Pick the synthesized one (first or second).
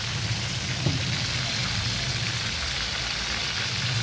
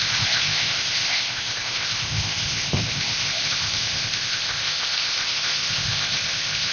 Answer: second